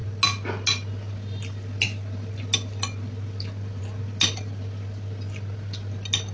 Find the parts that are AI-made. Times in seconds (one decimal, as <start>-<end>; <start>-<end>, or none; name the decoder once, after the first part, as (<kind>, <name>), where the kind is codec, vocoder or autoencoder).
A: none